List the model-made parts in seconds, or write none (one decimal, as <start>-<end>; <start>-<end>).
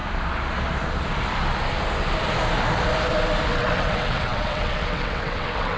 3.5-5.8